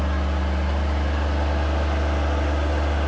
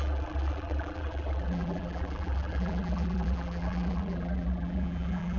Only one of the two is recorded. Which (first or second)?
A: first